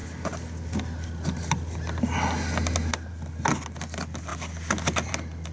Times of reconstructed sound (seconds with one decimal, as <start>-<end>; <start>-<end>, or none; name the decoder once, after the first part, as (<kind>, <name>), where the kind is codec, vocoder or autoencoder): none